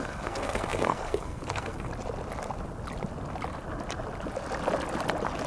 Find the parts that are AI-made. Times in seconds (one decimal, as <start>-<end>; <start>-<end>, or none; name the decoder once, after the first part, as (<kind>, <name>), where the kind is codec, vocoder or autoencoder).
0.0-1.9 (codec, SNAC)